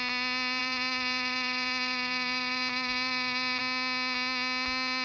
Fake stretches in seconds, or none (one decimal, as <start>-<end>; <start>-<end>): 0.6-3.6